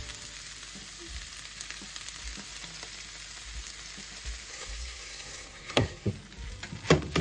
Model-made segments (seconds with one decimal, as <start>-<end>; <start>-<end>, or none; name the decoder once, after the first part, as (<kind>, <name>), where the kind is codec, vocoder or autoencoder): 4.5-6.1 (codec, SNAC)

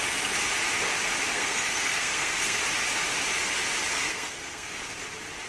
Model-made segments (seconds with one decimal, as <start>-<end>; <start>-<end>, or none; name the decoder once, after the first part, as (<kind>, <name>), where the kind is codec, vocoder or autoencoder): 1.3-2.6 (codec, SNAC); 3.9-4.8

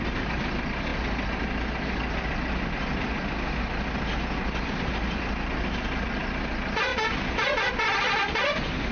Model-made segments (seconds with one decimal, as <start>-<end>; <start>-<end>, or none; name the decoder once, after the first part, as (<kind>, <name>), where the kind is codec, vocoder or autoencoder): none

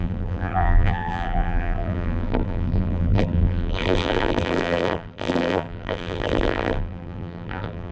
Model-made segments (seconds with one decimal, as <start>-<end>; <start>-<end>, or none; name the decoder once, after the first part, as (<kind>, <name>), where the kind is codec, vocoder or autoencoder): 0.0-7.9 (vocoder, BigVGAN v2)

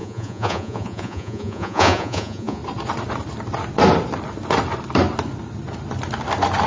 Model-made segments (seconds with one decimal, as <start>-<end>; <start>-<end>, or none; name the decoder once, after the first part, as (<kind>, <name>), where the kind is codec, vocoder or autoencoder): 0.0-2.6 (vocoder, Vocos)

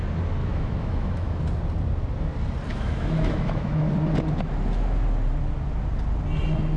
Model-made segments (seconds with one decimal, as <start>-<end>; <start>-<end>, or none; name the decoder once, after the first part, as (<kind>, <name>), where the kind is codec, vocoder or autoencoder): 0.4-1.4 (autoencoder, DAC-VAE); 2.7-3.9

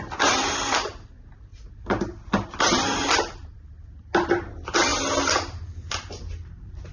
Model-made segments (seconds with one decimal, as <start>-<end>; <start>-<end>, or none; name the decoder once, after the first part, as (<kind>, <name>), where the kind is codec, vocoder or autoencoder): none